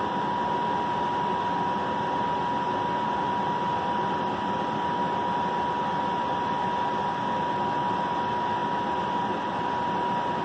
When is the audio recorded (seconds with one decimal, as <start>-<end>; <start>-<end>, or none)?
0.0-10.4